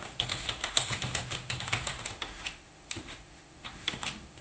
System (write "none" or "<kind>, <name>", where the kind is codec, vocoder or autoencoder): autoencoder, DAC-VAE